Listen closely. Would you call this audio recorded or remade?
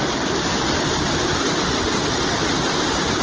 recorded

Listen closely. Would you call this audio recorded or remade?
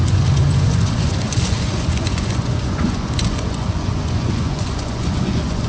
remade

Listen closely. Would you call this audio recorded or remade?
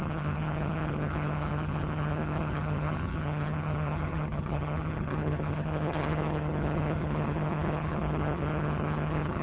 remade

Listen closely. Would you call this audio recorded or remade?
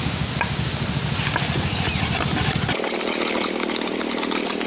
recorded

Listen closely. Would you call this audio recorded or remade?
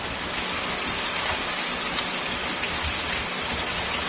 recorded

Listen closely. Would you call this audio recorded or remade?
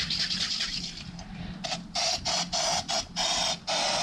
recorded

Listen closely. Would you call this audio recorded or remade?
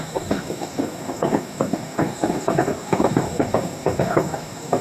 remade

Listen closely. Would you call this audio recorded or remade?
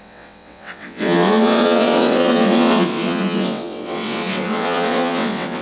remade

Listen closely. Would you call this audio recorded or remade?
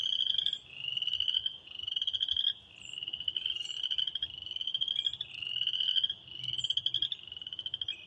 recorded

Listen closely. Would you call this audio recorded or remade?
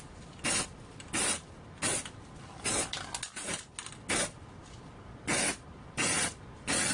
recorded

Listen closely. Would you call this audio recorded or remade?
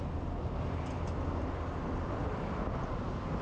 recorded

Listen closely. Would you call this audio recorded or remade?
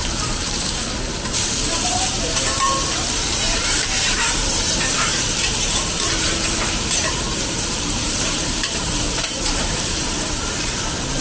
remade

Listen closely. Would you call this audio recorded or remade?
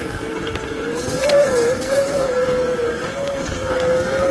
remade